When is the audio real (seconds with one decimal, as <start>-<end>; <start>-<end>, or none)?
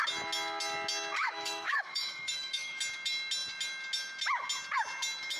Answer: 0.0-1.2; 2.8-5.4